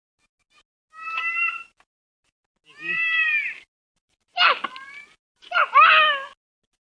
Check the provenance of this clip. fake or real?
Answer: real